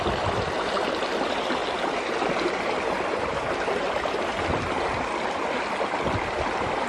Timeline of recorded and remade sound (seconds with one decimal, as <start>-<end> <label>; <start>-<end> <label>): 0.0-6.9 recorded